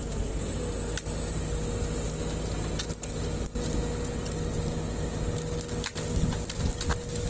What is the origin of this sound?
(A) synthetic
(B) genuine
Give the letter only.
B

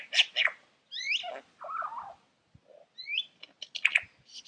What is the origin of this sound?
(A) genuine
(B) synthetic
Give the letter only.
A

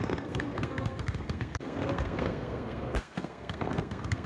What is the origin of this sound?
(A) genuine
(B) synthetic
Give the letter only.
B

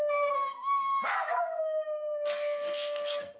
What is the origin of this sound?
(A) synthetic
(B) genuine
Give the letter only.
A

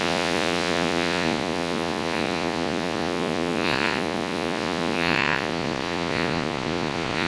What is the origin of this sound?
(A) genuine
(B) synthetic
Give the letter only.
B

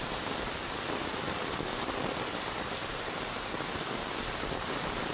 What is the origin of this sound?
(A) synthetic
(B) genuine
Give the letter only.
B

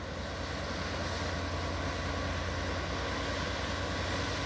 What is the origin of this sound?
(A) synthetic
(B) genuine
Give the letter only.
B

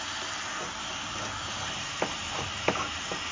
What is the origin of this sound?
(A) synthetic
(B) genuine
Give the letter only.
B